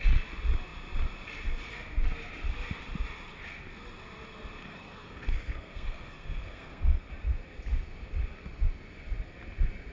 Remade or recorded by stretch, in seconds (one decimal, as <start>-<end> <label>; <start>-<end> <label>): 0.0-4.6 recorded; 4.6-7.0 remade; 7.0-9.9 recorded